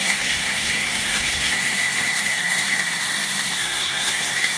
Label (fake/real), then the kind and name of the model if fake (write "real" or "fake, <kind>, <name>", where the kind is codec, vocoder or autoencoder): fake, codec, SNAC